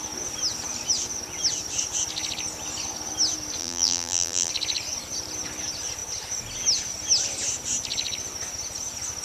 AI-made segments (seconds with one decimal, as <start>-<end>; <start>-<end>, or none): 3.6-4.5